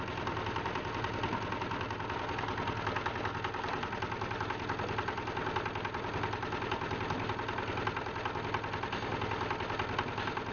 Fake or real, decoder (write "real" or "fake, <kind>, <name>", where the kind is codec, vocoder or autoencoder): real